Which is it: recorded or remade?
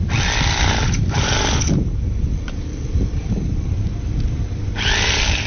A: recorded